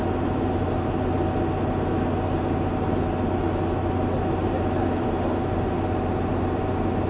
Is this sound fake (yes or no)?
no